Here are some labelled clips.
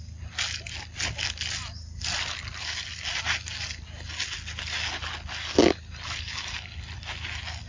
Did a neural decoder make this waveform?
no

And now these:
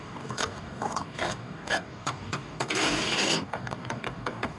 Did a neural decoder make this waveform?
yes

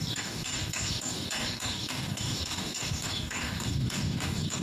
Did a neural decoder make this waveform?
yes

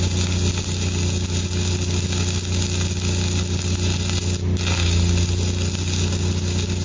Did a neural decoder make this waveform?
no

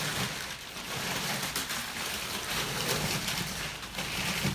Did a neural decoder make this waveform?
no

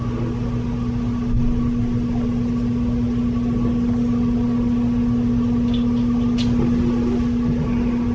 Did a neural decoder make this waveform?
no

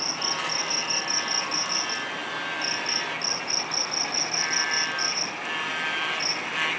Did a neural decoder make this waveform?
no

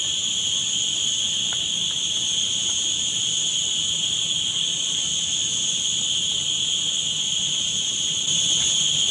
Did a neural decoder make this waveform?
no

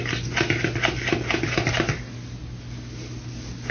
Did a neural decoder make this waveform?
no